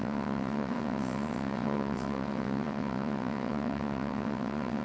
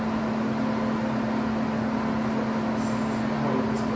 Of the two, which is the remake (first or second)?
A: first